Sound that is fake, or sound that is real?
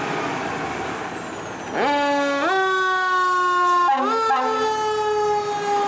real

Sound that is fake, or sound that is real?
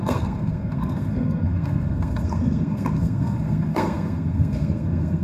fake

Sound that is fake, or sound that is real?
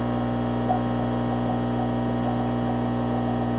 real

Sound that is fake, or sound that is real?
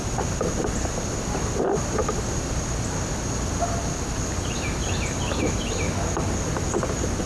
real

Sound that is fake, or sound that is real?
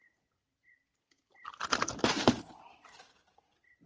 real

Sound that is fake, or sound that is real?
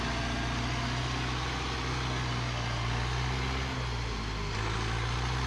real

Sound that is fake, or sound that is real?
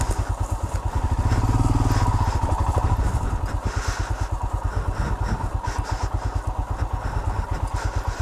real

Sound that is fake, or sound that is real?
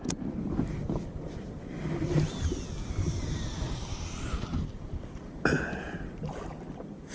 real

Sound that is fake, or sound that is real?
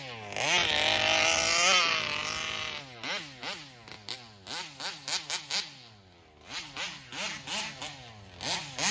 real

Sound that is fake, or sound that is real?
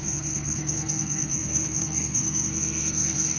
fake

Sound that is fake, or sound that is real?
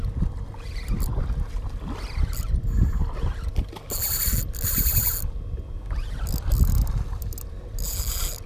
real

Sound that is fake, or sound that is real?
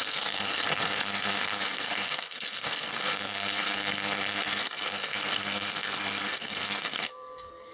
fake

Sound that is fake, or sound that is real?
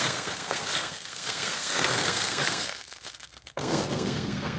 fake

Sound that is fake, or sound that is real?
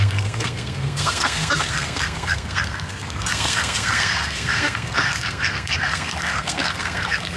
fake